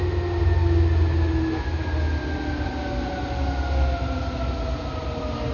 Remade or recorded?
recorded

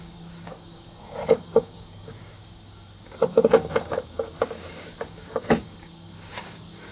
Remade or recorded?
remade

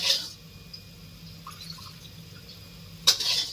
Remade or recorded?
recorded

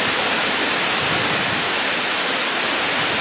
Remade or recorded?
recorded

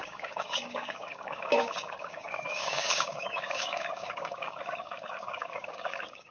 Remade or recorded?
remade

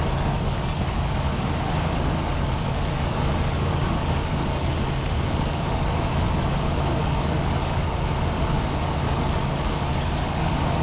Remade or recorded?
remade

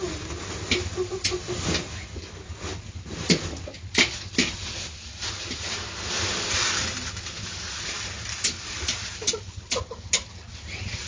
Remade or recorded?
recorded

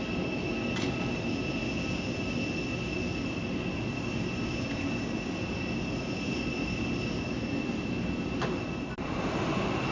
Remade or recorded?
recorded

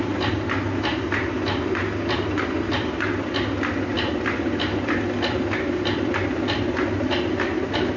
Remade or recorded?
recorded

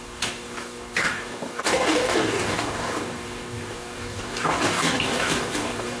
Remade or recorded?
remade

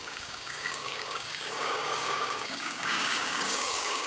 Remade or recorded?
remade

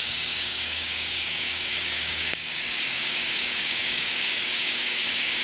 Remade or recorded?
remade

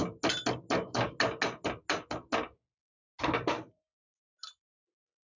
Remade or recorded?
recorded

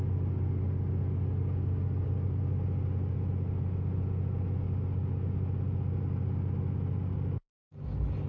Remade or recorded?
recorded